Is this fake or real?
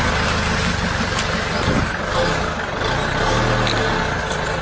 real